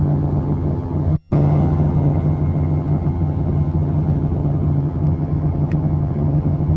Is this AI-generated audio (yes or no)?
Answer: yes